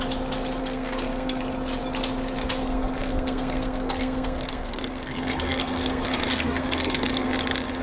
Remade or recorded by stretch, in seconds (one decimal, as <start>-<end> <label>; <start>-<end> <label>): 0.0-0.6 recorded; 0.6-1.4 remade; 1.4-2.6 recorded; 2.6-7.3 remade; 7.3-7.8 recorded